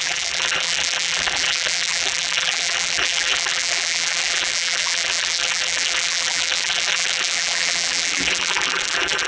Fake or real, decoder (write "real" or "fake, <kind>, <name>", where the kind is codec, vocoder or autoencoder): fake, vocoder, BigVGAN v2